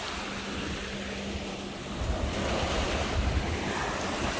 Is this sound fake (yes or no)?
no